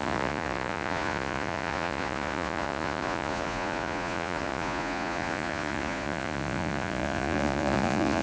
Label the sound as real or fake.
fake